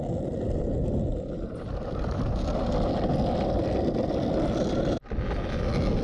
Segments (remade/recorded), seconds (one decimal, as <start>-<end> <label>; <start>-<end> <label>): 0.0-1.1 recorded; 1.1-2.4 remade; 2.4-6.0 recorded